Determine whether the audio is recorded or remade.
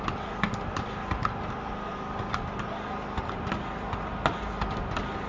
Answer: recorded